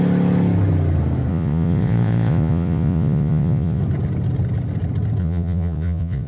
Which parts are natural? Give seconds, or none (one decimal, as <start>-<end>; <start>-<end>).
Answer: 0.0-1.3; 3.8-5.2